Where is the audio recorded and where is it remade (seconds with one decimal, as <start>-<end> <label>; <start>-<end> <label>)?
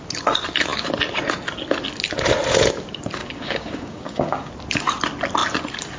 0.0-3.2 recorded; 3.2-4.5 remade; 4.5-6.0 recorded